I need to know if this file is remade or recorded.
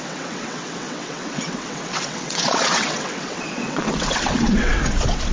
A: remade